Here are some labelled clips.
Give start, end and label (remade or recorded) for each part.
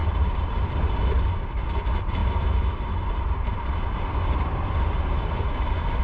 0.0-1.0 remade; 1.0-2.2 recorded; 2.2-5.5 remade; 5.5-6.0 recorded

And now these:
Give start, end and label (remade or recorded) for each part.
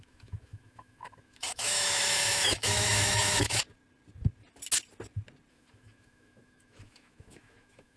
0.0-3.6 remade; 3.6-5.5 recorded; 5.5-8.0 remade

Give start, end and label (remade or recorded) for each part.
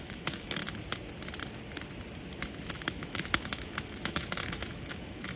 0.0-0.6 remade; 0.6-2.7 recorded; 2.7-5.4 remade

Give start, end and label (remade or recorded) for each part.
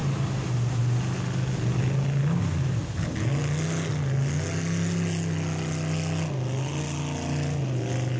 0.0-8.2 recorded